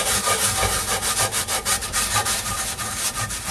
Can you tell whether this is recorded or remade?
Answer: remade